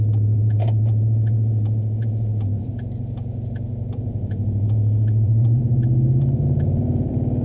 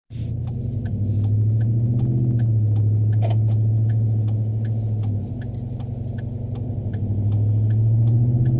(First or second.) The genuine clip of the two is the second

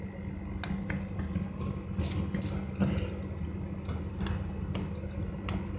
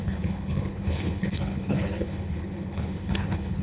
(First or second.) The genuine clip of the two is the first